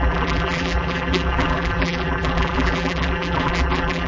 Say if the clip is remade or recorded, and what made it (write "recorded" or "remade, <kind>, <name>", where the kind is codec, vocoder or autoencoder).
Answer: remade, vocoder, BigVGAN v2